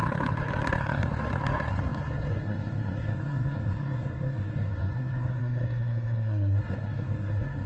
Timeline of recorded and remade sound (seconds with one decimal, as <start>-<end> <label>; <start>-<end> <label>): 0.0-7.7 remade